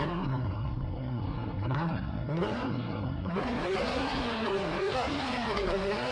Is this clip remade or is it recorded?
remade